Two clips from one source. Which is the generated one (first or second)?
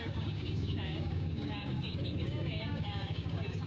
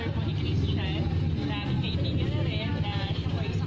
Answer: first